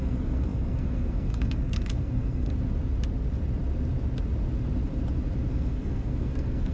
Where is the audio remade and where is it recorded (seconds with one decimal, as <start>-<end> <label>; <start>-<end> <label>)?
0.0-2.5 remade; 2.5-5.5 recorded; 5.5-6.7 remade